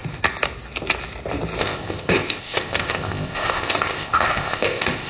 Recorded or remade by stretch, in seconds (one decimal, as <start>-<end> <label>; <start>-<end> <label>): 0.0-1.6 recorded; 1.6-5.1 remade